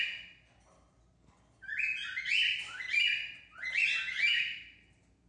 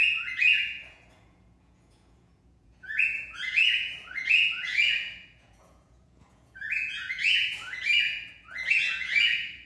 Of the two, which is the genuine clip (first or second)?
first